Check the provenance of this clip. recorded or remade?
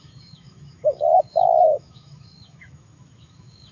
remade